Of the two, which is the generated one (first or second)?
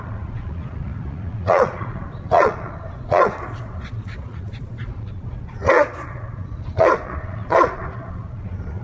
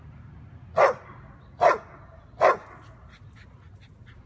first